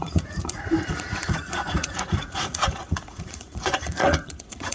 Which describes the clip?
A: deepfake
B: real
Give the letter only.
A